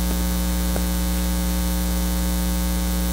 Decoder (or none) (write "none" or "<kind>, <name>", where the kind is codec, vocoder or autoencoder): none